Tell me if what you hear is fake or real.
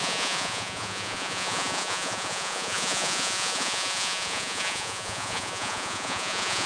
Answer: fake